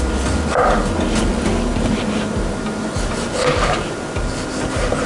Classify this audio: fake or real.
real